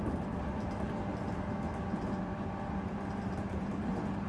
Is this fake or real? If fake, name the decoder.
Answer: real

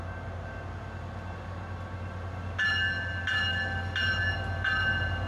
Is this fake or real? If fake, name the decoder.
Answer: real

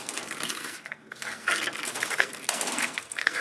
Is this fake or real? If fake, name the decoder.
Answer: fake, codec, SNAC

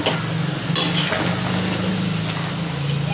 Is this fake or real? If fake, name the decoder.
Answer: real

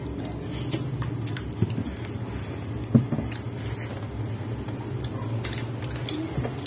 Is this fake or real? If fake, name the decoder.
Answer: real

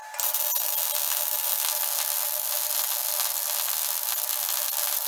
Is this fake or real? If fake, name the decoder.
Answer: real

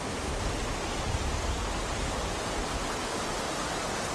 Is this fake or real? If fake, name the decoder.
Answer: real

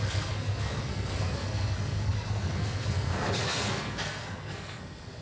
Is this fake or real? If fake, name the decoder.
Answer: fake, codec, SNAC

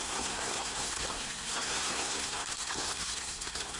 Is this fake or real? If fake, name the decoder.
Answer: fake, codec, SNAC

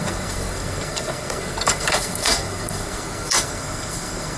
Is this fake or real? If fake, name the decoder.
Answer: fake, codec, SNAC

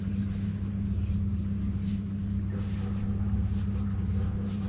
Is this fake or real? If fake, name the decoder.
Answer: real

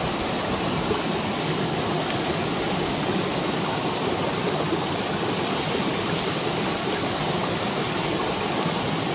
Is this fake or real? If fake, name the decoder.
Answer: real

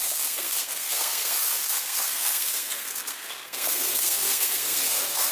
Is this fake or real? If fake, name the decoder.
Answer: fake, codec, SNAC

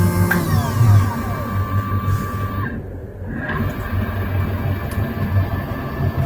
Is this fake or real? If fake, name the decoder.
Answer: real